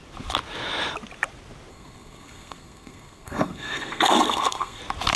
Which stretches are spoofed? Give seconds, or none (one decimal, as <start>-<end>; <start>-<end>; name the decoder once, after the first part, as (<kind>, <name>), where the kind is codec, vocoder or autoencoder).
1.7-4.8 (codec, SNAC)